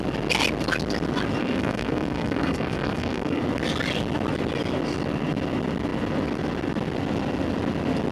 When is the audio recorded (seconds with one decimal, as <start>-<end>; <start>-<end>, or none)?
0.0-1.4; 3.4-8.1